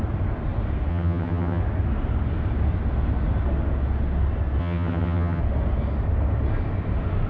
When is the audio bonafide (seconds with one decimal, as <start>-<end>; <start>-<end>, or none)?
0.0-0.9; 1.6-4.6; 5.4-7.3